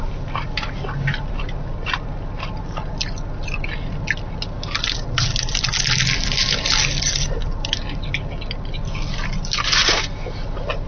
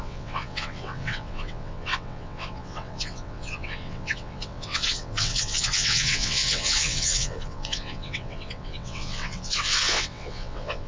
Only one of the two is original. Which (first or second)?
first